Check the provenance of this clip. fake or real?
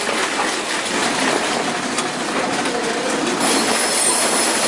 real